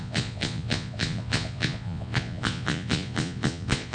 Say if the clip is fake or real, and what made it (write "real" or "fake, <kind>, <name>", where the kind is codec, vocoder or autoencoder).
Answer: fake, vocoder, Vocos